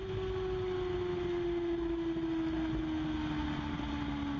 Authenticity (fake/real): real